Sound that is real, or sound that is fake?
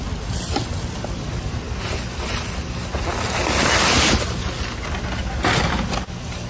real